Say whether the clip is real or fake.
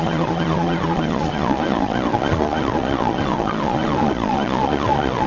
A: fake